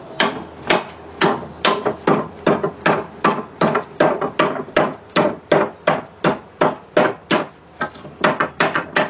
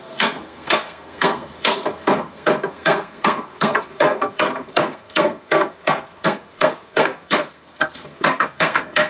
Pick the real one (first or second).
first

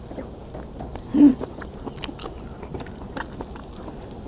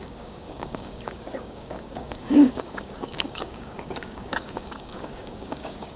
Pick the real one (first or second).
first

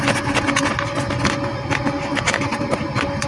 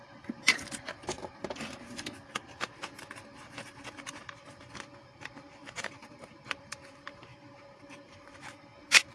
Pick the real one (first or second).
first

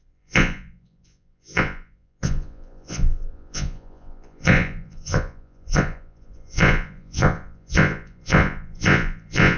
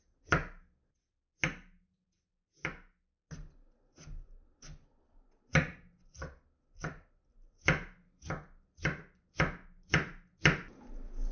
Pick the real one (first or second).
second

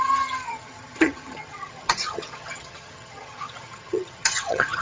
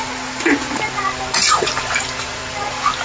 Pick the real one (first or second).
second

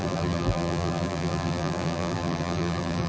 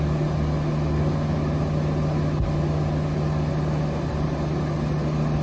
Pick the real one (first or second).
second